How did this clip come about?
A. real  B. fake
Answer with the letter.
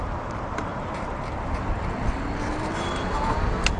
A